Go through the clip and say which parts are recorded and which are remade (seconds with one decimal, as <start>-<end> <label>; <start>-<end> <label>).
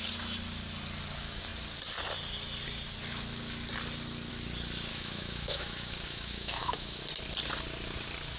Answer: 0.0-4.9 recorded; 4.9-7.0 remade; 7.0-8.4 recorded